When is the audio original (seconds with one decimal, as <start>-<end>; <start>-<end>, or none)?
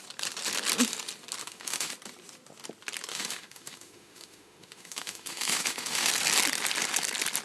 0.0-1.4; 1.9-3.1; 6.1-7.4